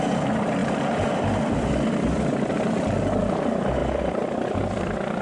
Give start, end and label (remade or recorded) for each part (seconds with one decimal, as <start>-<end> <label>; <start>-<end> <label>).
0.0-5.2 remade